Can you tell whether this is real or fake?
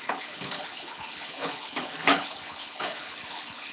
fake